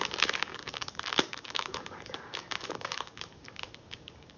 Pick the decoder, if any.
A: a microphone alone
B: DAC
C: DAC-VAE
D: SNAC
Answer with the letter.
B